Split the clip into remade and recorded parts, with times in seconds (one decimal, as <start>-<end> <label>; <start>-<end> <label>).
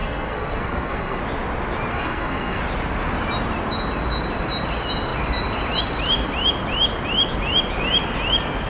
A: 0.0-1.2 remade; 1.2-1.9 recorded; 1.9-2.6 remade; 2.6-8.7 recorded